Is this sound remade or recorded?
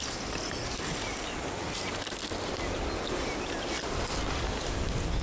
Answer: recorded